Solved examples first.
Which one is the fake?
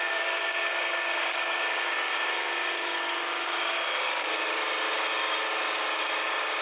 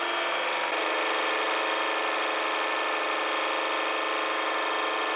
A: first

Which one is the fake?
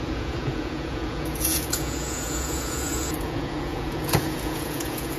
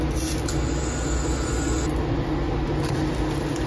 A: first